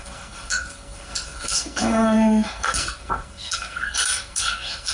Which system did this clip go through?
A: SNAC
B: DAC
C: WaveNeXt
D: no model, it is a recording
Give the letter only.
A